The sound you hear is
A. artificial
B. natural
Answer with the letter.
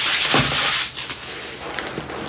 B